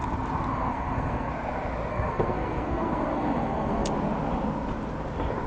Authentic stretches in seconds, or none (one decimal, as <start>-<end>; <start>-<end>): 0.0-0.5; 1.3-1.9; 3.9-5.5